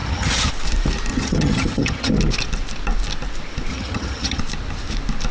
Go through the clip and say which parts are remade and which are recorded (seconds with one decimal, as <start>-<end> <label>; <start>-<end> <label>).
0.0-0.5 remade; 0.5-1.1 recorded; 1.1-2.1 remade; 2.1-3.7 recorded; 3.7-4.4 remade; 4.4-5.3 recorded